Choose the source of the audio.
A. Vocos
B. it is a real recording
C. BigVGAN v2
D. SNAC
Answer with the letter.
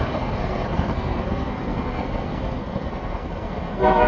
D